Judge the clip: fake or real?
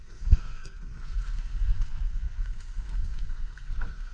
fake